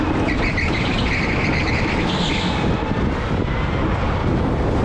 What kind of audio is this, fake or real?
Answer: real